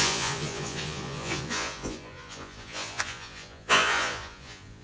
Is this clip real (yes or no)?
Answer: no